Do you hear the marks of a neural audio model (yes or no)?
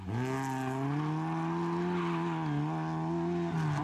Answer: no